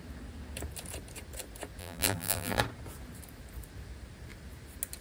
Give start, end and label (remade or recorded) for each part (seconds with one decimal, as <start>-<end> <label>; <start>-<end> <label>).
0.0-1.8 recorded; 1.8-2.6 remade; 2.6-5.0 recorded